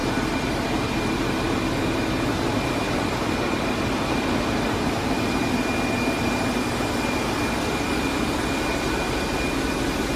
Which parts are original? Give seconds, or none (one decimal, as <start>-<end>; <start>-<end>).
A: 0.0-10.2